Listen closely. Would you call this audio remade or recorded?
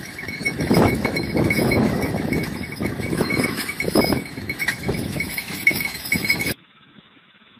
remade